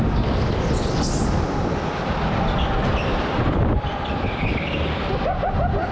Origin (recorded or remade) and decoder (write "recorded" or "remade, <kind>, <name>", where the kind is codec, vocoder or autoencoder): recorded